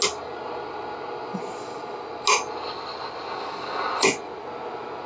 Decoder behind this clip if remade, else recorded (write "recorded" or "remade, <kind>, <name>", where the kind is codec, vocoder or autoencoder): recorded